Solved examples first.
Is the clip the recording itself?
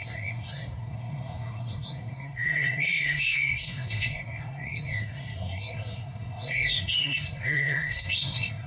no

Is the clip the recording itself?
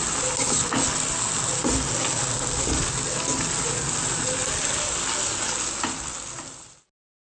yes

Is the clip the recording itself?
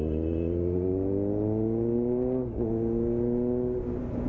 yes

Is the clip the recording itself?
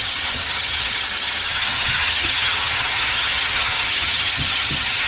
no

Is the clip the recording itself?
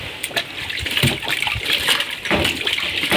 yes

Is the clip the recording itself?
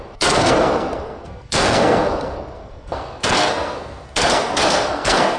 no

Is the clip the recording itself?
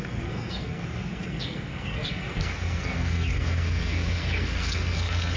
no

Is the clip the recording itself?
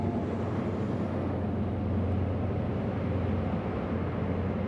yes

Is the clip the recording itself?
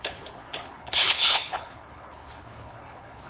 no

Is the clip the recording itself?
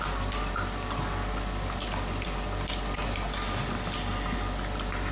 yes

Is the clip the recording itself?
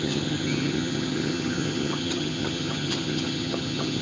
no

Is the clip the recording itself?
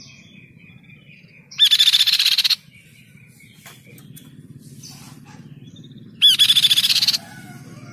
yes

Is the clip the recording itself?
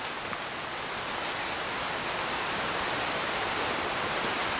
yes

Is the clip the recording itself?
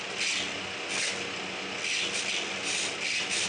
yes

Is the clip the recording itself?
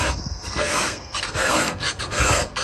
no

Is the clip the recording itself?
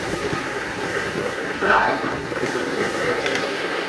no